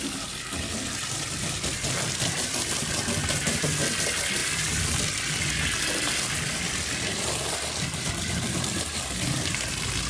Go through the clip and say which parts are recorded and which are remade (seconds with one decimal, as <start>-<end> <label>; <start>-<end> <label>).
0.0-4.4 remade; 4.4-7.9 recorded; 7.9-10.1 remade